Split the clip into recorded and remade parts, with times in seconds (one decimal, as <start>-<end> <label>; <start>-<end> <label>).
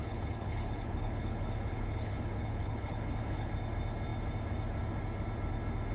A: 0.0-3.5 remade; 3.5-5.9 recorded